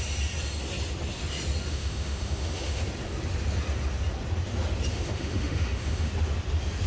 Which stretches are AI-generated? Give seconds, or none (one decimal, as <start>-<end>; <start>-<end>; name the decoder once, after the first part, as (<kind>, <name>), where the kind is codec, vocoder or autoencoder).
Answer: 1.7-2.8 (autoencoder, DAC-VAE); 4.9-6.1